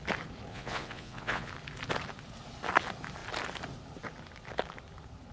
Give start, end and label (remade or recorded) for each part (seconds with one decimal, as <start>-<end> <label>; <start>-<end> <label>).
0.0-0.5 recorded; 0.5-1.5 remade; 1.5-5.3 recorded